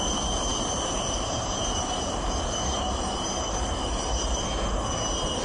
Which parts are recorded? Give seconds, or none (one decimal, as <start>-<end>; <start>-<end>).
0.0-0.5; 3.7-5.4